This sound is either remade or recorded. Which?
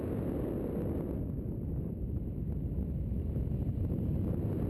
recorded